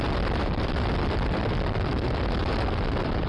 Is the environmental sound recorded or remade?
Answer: remade